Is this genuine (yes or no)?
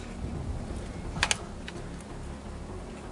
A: yes